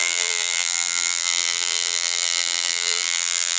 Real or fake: fake